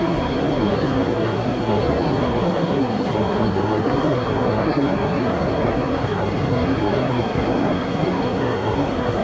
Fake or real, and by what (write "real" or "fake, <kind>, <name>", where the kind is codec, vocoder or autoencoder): fake, codec, SNAC